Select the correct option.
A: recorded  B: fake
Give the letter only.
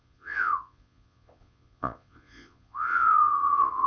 B